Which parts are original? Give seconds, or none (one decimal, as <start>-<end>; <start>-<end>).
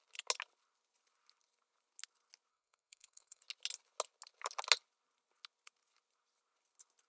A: 0.0-2.5; 3.4-7.1